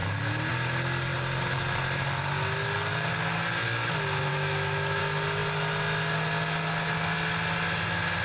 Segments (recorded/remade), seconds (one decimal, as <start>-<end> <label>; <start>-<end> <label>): 0.0-4.3 recorded; 4.3-5.0 remade; 5.0-8.2 recorded